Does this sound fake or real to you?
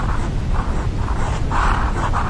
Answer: real